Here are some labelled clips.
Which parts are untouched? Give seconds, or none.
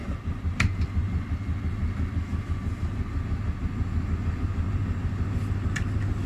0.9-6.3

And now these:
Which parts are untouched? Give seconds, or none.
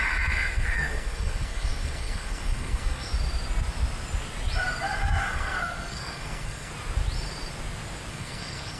3.1-5.2; 6.7-8.1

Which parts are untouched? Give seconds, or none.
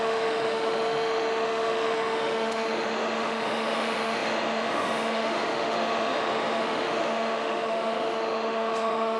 none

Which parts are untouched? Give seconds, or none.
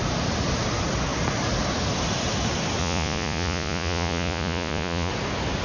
0.0-2.8; 5.1-5.6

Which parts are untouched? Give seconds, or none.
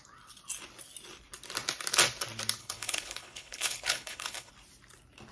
0.0-2.6; 4.5-5.3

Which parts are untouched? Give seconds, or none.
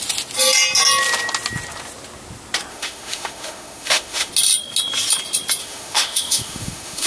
0.0-2.7; 4.3-5.6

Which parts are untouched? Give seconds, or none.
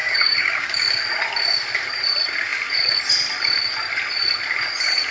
0.8-5.1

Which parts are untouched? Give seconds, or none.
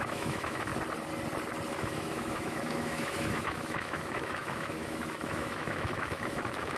0.7-1.7